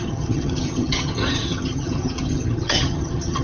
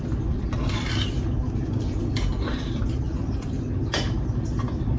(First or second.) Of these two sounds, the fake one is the first